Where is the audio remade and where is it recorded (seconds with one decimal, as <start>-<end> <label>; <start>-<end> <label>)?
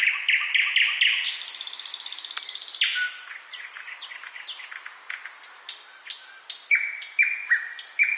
0.0-8.2 recorded